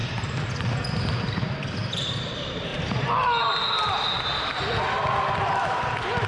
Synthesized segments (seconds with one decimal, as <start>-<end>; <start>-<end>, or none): none